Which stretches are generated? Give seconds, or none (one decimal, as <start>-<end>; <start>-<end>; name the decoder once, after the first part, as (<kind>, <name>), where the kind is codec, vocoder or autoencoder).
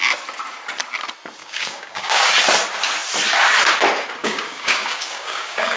1.4-2.3 (codec, DAC); 4.2-5.8